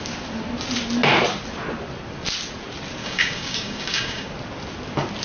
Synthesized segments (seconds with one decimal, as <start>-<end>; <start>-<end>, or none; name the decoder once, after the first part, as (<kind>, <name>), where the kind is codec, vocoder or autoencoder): 3.0-4.3 (codec, DAC)